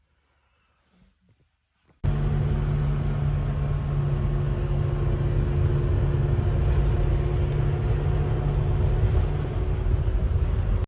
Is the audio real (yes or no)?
yes